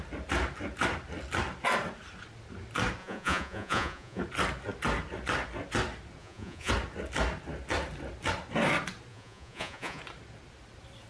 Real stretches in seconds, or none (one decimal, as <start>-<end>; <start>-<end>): 0.0-3.0; 4.2-6.2; 6.7-9.1; 10.0-11.1